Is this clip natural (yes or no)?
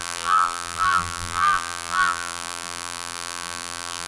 no